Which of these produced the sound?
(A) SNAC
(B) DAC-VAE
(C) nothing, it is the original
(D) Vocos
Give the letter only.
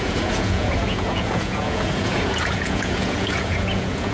D